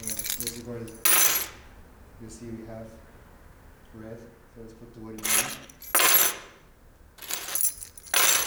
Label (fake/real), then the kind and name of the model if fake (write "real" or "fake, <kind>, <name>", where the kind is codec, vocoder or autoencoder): real